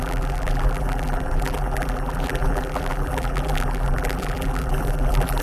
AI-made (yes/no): yes